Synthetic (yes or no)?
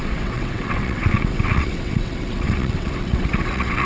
yes